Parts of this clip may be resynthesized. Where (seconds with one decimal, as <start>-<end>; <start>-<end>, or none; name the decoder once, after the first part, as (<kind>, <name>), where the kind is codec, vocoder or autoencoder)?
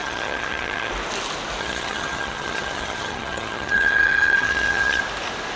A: 0.0-0.9 (vocoder, HiFi-GAN); 1.6-5.0